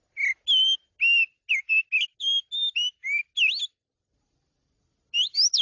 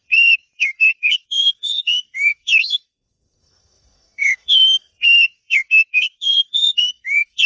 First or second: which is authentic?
first